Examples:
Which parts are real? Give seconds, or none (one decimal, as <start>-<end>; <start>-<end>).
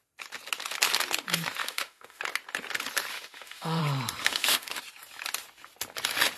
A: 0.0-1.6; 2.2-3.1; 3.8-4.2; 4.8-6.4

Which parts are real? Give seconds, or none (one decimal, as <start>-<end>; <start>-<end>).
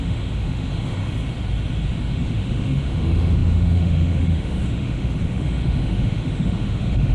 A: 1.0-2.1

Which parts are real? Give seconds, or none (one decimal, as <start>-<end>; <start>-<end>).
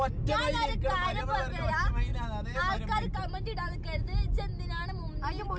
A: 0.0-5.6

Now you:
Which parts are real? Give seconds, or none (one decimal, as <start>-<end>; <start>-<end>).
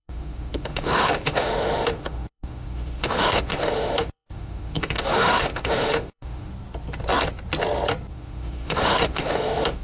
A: 6.5-8.1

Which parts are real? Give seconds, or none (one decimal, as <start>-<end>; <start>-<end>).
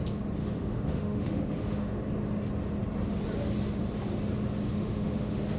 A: 0.0-0.4; 2.0-4.7